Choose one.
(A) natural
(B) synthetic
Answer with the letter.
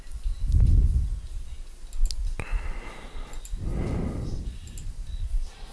A